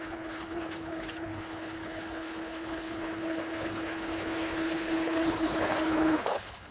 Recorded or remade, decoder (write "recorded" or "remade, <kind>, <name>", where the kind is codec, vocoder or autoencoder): remade, codec, HILCodec